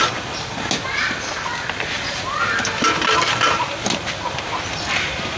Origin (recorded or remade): recorded